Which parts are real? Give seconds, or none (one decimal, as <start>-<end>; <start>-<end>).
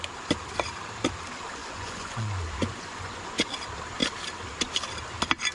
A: 0.0-1.6; 3.5-5.5